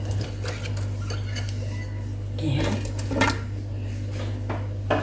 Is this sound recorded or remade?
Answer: recorded